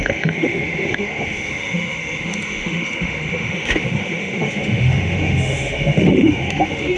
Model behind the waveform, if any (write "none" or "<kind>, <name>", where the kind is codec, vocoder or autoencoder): autoencoder, DAC-VAE